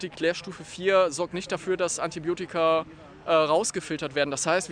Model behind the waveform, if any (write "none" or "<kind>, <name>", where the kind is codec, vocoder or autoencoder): none